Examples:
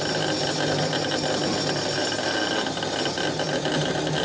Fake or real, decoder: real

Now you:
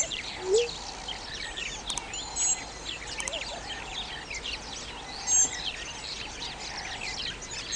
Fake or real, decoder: real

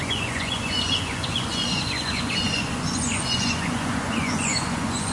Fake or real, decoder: fake, vocoder, Vocos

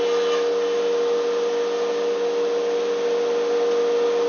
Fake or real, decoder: real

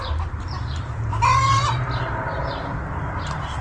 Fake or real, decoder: fake, vocoder, BigVGAN v2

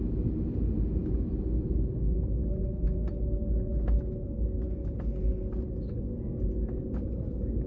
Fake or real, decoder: real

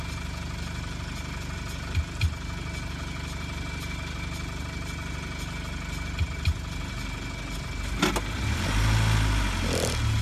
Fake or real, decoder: real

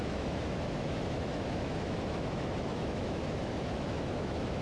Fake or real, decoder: fake, autoencoder, DAC-VAE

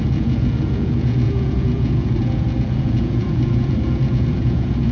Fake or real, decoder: fake, vocoder, Vocos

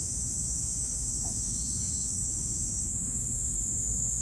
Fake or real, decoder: fake, autoencoder, DAC-VAE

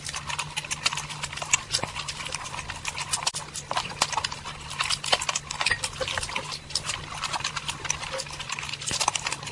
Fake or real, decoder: real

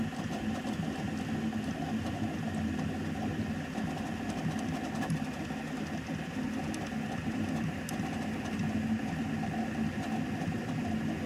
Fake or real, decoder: real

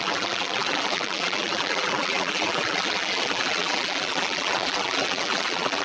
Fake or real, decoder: fake, vocoder, BigVGAN v2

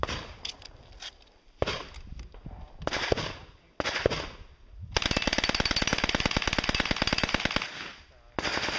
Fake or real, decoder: real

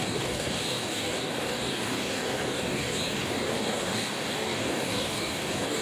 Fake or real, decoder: fake, codec, DAC